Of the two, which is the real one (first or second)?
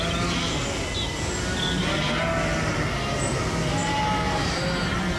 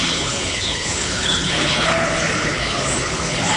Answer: first